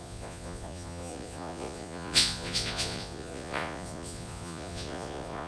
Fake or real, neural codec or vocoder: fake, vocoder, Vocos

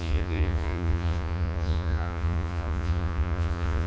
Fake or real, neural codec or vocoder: fake, vocoder, Vocos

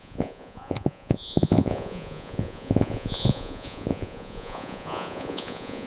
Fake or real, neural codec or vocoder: fake, vocoder, Vocos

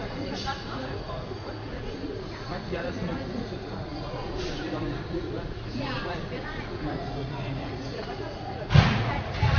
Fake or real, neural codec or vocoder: fake, vocoder, Vocos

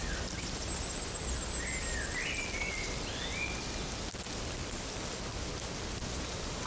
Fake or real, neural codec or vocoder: real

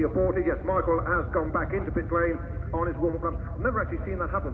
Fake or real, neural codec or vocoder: real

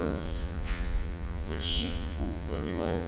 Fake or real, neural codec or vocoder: fake, vocoder, Vocos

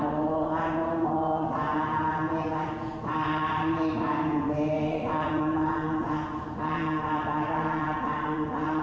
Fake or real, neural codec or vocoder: fake, vocoder, Vocos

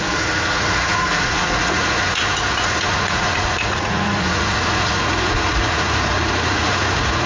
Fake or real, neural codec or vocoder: fake, vocoder, Vocos